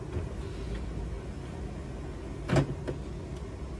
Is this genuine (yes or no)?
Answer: yes